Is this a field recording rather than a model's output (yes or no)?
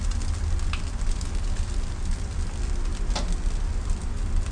yes